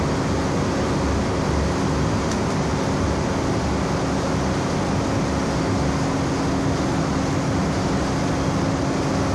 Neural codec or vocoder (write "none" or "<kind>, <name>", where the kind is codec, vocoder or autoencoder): none